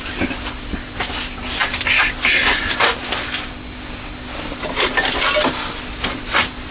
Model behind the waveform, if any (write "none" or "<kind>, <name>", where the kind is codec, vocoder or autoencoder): none